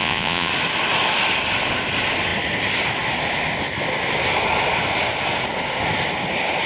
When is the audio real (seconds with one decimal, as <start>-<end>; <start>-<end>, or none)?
0.5-6.7